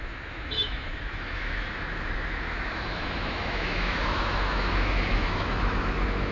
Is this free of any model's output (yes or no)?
no